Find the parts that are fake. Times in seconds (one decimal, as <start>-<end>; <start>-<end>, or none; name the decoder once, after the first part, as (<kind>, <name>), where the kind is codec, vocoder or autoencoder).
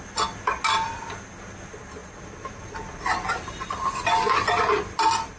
2.0-5.4 (vocoder, BigVGAN v2)